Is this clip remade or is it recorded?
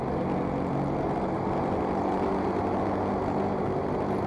recorded